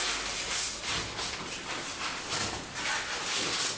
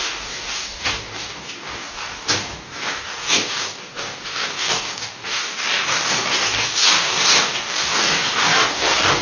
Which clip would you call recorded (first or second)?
first